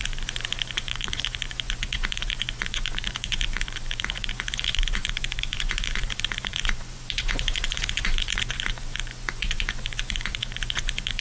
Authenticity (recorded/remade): remade